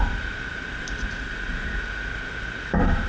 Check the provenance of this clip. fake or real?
fake